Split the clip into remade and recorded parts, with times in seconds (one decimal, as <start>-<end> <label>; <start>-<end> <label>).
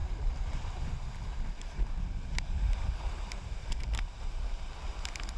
0.0-0.9 remade; 0.9-1.3 recorded; 1.3-4.5 remade; 4.5-5.4 recorded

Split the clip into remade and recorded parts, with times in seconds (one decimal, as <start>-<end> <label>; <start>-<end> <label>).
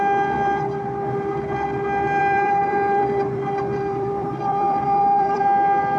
0.0-2.2 recorded; 2.2-5.4 remade; 5.4-6.0 recorded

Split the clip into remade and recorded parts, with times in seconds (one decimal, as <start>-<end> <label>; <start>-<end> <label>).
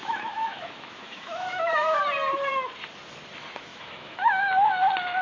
0.0-2.0 remade; 2.0-3.7 recorded; 3.7-4.4 remade; 4.4-5.2 recorded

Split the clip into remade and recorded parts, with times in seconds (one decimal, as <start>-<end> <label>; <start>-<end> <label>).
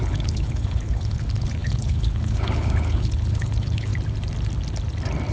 0.0-3.9 remade; 3.9-5.3 recorded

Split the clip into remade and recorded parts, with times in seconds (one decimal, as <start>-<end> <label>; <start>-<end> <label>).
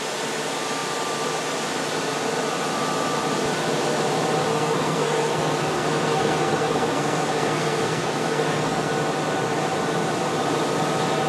0.0-4.5 recorded; 4.5-8.9 remade; 8.9-11.3 recorded